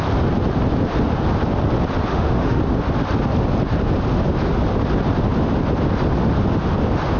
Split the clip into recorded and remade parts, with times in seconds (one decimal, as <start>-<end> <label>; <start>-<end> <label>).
0.0-2.1 recorded; 2.1-2.6 remade; 2.6-7.2 recorded